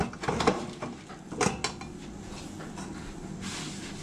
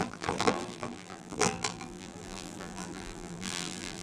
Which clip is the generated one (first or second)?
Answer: second